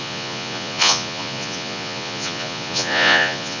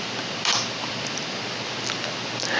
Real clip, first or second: second